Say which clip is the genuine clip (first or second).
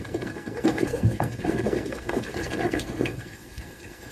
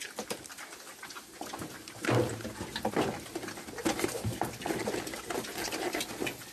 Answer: second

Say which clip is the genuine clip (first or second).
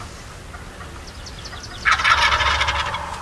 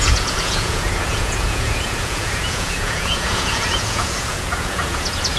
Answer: first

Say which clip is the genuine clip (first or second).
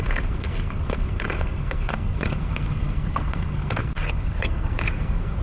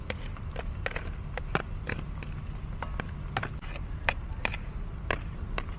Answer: second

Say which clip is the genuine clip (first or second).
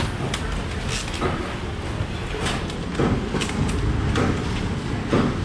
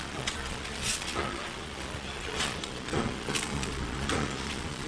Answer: first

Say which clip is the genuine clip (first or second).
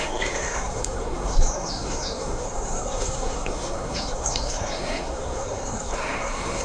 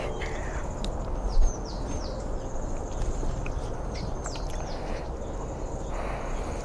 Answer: second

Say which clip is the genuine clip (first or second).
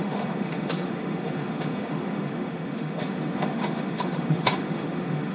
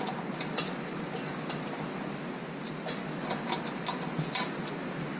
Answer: second